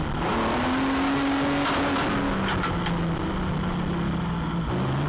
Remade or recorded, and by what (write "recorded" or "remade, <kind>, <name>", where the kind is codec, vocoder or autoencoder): recorded